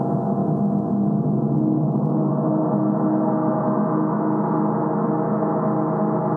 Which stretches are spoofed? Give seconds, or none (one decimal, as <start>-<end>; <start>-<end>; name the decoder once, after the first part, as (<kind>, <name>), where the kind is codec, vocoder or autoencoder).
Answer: none